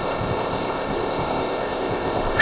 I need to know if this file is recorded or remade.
remade